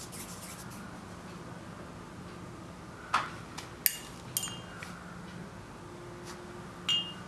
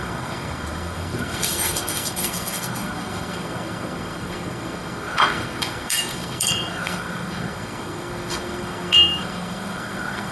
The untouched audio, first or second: first